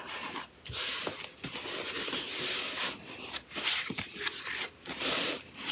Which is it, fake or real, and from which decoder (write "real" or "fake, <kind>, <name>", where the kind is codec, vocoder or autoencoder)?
fake, vocoder, BigVGAN v2